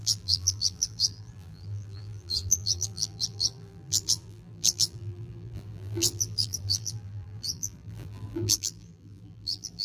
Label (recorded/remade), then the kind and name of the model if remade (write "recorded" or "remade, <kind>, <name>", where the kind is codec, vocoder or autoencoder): remade, vocoder, BigVGAN v2